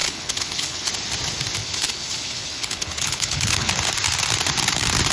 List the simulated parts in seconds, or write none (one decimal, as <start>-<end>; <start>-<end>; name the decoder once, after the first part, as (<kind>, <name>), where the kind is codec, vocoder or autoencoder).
0.0-0.9 (codec, HILCodec); 1.6-3.7

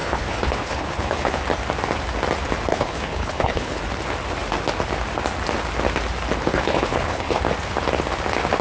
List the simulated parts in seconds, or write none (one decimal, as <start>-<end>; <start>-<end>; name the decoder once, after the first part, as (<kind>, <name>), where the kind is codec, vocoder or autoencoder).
0.0-1.4 (codec, HILCodec); 2.7-3.8; 6.4-7.4

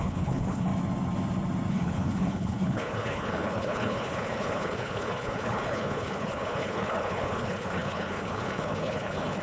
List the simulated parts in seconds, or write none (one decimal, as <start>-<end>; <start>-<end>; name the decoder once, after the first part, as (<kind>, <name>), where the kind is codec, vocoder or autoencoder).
0.0-0.7 (codec, HILCodec); 1.7-9.4

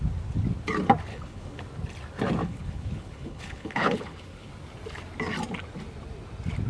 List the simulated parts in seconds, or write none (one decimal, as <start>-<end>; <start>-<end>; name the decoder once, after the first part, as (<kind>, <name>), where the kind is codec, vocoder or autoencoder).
1.1-1.6 (codec, HILCodec); 2.4-4.5